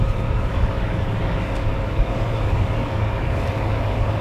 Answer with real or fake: fake